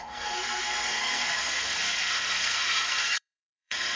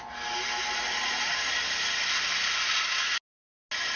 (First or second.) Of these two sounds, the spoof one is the first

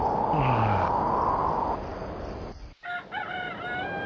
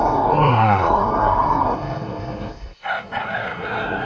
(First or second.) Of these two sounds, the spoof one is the second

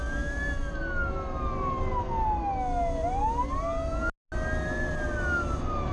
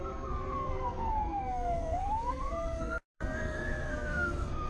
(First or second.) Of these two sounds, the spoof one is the second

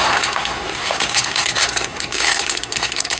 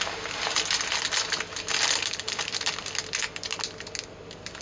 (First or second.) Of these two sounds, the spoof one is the first